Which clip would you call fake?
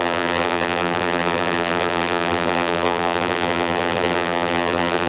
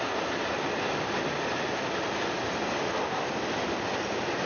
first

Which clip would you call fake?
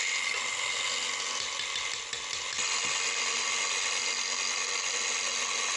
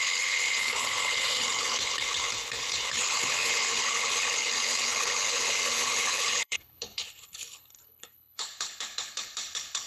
second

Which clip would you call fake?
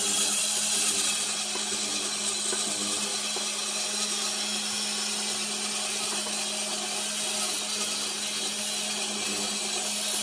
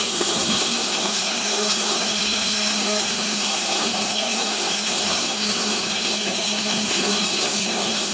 second